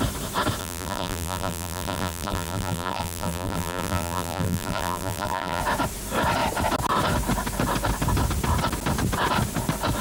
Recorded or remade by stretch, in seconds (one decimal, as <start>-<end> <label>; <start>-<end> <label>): 0.0-0.6 recorded; 0.6-5.6 remade; 5.6-10.0 recorded